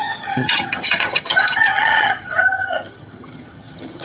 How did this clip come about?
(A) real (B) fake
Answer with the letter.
B